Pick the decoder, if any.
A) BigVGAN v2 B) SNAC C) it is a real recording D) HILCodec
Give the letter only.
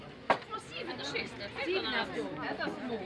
C